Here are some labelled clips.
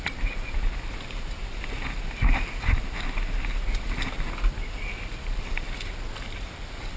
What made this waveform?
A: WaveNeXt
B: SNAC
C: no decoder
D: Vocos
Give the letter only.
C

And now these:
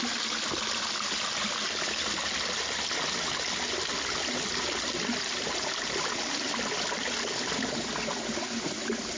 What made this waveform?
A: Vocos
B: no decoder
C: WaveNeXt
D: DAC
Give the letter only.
B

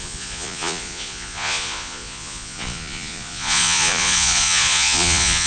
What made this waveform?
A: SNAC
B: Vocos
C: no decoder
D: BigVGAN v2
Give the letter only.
B